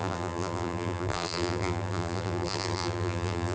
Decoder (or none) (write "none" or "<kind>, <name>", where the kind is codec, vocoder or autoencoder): vocoder, BigVGAN v2